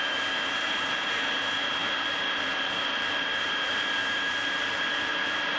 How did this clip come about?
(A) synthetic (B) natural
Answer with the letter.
A